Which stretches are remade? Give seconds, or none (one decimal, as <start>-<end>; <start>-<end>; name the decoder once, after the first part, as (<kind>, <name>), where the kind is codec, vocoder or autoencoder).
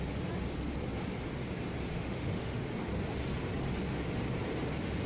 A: 1.9-2.6 (autoencoder, DAC-VAE)